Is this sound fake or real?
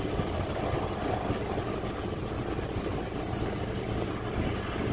real